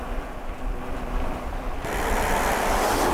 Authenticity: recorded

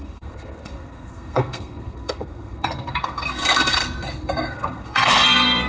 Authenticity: remade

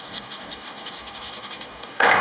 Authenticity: remade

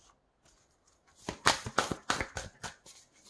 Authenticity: recorded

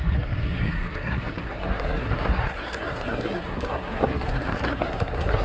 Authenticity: remade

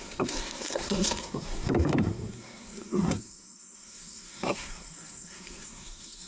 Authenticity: remade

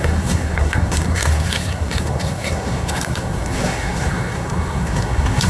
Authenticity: remade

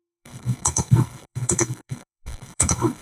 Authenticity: remade